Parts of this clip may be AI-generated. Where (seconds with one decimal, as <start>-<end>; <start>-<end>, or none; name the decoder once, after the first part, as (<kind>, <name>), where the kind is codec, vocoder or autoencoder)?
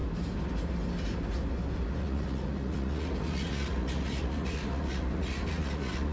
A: 2.0-6.1 (vocoder, Vocos)